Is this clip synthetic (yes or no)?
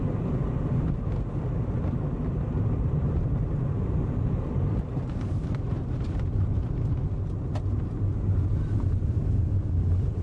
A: yes